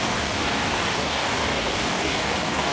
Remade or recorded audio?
remade